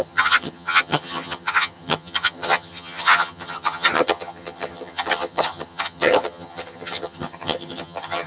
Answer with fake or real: fake